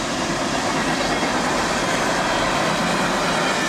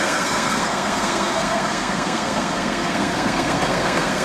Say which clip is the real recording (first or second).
first